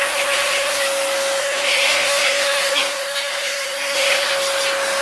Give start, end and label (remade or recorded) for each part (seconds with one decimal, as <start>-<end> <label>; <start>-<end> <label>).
0.0-0.8 remade; 0.8-1.4 recorded; 1.4-4.3 remade; 4.3-5.0 recorded

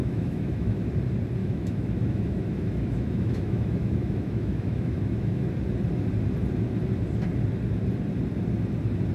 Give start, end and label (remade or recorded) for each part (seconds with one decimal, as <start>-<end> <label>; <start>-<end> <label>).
0.0-0.8 remade; 0.8-1.4 recorded; 1.4-5.5 remade; 5.5-9.1 recorded

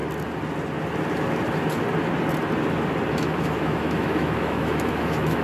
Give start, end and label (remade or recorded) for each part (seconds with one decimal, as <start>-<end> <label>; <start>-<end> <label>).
0.0-3.2 recorded; 3.2-5.4 remade

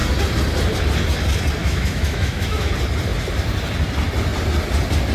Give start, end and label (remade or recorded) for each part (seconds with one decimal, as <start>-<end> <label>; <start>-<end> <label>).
0.0-1.6 recorded; 1.6-2.7 remade; 2.7-5.1 recorded

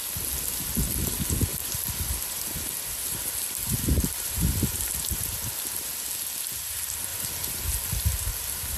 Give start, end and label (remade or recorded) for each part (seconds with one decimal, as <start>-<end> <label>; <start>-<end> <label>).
0.0-1.5 recorded; 1.5-4.5 remade; 4.5-8.8 recorded

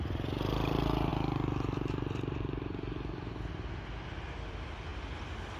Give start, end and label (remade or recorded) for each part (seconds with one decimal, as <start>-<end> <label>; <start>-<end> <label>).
0.0-5.6 recorded

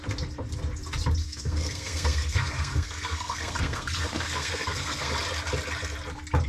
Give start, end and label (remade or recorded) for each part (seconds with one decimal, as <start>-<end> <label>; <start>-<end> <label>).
0.0-1.2 recorded; 1.2-5.1 remade; 5.1-6.5 recorded